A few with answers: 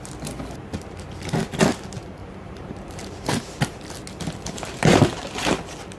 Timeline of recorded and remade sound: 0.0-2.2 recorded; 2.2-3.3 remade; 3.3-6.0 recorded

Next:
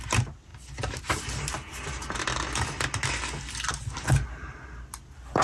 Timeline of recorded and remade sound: 0.0-5.4 recorded